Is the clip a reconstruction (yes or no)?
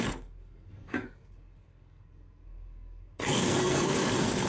yes